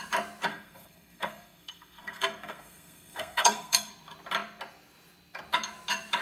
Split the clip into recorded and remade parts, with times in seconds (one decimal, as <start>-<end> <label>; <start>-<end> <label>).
0.0-0.5 recorded; 0.5-3.9 remade; 3.9-6.2 recorded